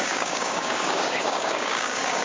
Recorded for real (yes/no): no